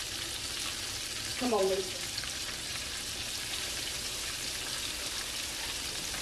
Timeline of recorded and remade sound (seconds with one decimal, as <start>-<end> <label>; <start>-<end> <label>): 0.0-1.3 recorded; 1.3-4.2 remade; 4.2-6.2 recorded